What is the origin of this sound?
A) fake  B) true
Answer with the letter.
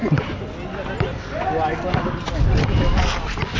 B